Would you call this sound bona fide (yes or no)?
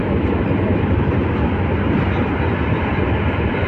yes